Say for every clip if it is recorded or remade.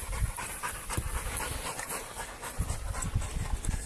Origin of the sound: recorded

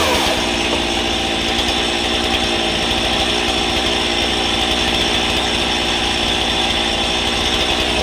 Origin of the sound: recorded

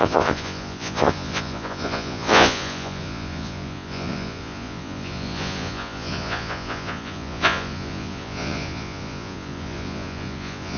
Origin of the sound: remade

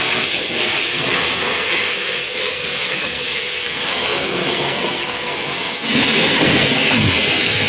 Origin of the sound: remade